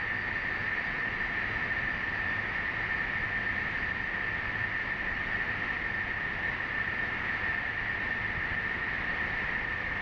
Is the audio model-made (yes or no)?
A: no